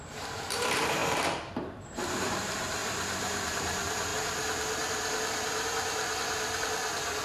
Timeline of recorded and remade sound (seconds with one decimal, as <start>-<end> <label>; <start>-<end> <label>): 0.0-4.1 remade; 4.1-7.2 recorded